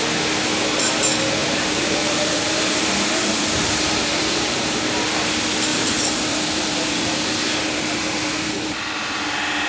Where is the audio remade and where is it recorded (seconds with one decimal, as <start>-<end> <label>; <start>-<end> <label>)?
0.0-1.4 recorded; 1.4-4.8 remade; 4.8-5.7 recorded; 5.7-9.2 remade; 9.2-9.7 recorded